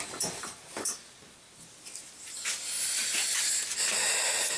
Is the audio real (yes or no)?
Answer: yes